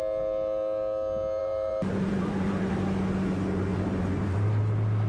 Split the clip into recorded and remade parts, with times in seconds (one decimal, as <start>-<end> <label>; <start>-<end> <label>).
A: 0.0-1.4 recorded; 1.4-2.7 remade; 2.7-3.7 recorded; 3.7-4.6 remade; 4.6-5.1 recorded